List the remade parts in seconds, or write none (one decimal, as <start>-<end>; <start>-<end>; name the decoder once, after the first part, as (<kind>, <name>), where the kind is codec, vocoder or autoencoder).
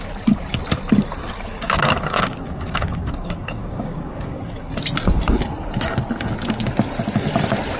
1.5-4.7 (codec, DAC)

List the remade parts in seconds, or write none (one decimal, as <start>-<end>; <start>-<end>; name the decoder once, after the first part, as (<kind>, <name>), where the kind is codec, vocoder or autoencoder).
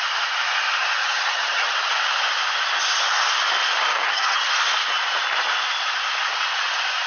1.0-1.7 (vocoder, HiFi-GAN); 3.9-4.5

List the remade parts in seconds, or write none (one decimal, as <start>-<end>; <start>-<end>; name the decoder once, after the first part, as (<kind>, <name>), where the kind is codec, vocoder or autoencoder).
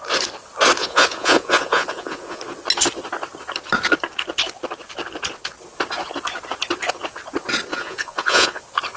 0.8-2.4 (vocoder, Vocos); 7.7-8.6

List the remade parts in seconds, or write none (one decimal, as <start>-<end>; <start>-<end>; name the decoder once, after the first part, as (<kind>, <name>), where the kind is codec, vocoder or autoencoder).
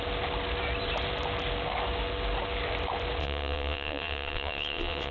3.2-5.1 (vocoder, WaveNeXt)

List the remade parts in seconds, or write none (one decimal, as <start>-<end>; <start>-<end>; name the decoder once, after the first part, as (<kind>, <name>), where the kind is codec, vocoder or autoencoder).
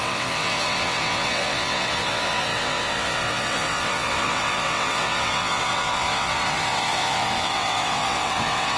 0.0-8.8 (vocoder, WaveNeXt)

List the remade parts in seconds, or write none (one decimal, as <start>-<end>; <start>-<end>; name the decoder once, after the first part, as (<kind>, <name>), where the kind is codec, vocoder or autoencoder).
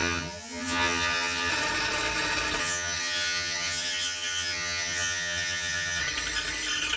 0.0-1.5 (vocoder, HiFi-GAN); 2.6-6.0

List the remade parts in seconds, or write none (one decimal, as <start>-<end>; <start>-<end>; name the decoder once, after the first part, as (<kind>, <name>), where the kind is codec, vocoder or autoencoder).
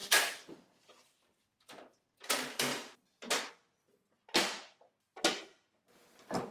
none